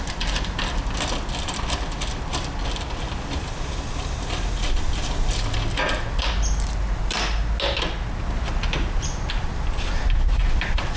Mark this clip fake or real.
real